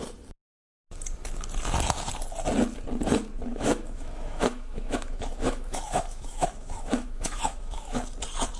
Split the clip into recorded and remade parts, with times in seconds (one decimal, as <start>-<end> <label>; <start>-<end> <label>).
0.0-3.5 recorded; 3.5-8.0 remade; 8.0-8.6 recorded